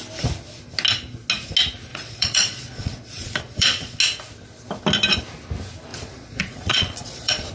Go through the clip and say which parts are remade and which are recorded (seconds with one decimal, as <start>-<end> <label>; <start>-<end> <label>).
0.0-1.9 recorded; 1.9-4.0 remade; 4.0-5.9 recorded; 5.9-7.5 remade